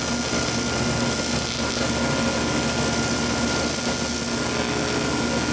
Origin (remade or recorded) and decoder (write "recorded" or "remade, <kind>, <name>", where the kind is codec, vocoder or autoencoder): recorded